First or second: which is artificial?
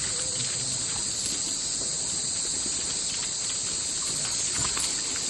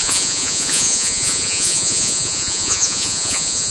second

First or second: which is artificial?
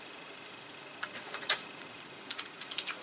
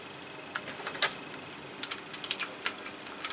first